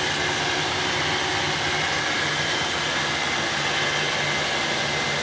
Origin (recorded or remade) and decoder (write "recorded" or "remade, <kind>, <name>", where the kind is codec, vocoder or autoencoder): recorded